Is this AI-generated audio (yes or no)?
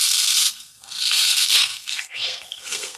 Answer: yes